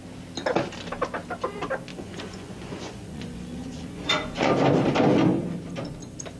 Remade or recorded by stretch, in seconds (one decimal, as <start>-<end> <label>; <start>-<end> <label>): 0.0-1.9 recorded; 1.9-4.5 remade; 4.5-6.4 recorded